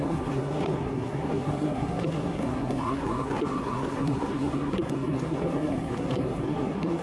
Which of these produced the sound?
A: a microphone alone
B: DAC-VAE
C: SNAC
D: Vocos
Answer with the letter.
C